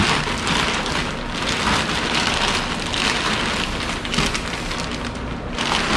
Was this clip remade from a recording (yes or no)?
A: no